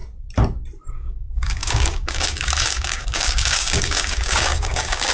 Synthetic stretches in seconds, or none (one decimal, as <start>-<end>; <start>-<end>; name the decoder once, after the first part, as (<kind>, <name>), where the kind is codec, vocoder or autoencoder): 0.9-5.1 (codec, DAC)

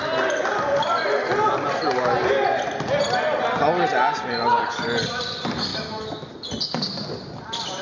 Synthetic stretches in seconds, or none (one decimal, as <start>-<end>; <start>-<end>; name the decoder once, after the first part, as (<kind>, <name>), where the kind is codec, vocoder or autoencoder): 5.7-6.3 (autoencoder, DAC-VAE)

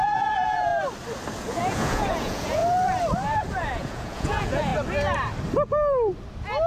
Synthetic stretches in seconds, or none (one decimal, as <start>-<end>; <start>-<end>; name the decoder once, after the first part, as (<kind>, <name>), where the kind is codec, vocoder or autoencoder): 0.0-0.7 (vocoder, Vocos); 1.4-2.6; 3.5-4.7

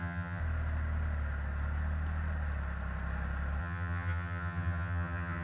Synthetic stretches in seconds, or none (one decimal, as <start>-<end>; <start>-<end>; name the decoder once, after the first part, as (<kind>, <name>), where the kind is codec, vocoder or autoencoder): 0.0-0.4 (vocoder, HiFi-GAN); 3.6-5.4